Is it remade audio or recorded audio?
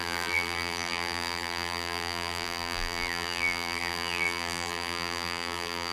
remade